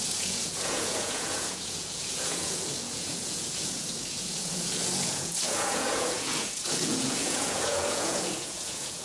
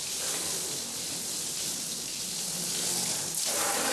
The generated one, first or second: first